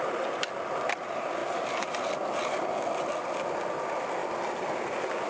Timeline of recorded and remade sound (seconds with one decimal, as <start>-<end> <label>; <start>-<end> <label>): 0.0-5.3 recorded